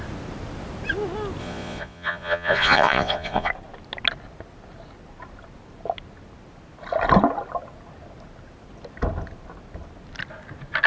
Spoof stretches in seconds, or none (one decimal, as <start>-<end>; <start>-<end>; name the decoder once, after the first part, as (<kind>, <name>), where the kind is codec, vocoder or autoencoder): 1.4-3.5 (vocoder, Vocos)